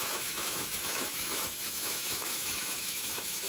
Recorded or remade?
remade